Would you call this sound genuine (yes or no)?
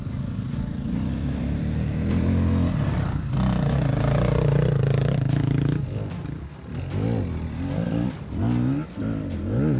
yes